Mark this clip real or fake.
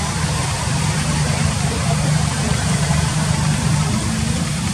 fake